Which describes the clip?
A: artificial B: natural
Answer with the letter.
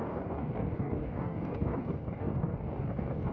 A